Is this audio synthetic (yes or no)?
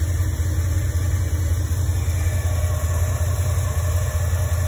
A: no